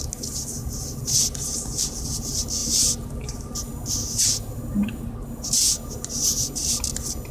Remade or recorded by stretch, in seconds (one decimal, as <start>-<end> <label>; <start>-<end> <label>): 0.0-7.3 recorded